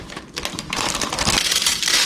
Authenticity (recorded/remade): remade